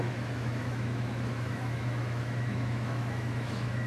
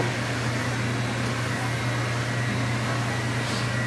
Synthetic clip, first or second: first